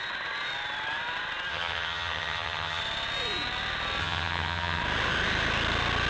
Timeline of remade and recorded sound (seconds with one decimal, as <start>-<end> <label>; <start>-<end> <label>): 0.0-1.5 recorded; 1.5-2.8 remade; 2.8-4.0 recorded; 4.0-4.8 remade; 4.8-6.1 recorded